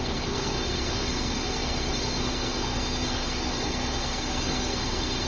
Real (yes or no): no